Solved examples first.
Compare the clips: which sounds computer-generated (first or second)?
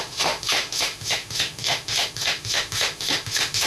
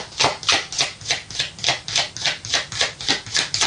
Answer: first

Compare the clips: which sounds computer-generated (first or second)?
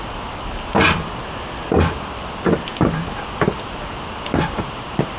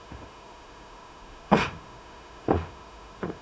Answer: second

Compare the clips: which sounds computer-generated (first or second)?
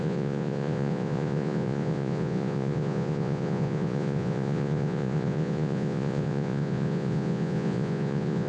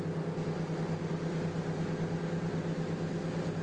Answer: first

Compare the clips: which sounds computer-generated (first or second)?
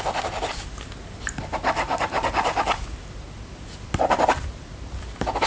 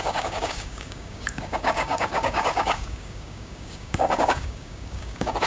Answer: second